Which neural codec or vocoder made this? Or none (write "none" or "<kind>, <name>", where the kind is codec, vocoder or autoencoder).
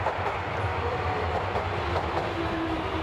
none